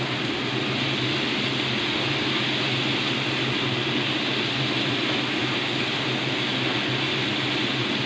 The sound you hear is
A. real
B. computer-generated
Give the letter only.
A